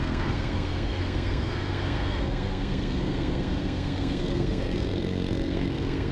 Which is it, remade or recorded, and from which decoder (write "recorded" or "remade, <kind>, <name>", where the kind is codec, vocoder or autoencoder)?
remade, codec, SNAC